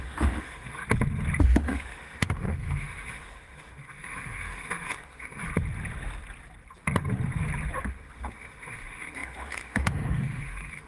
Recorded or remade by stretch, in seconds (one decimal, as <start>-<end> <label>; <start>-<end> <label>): 0.0-0.8 remade; 0.8-1.4 recorded; 1.4-5.5 remade; 5.5-7.8 recorded; 7.8-10.9 remade